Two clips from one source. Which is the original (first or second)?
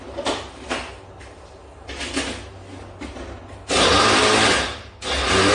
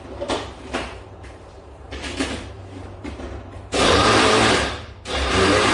first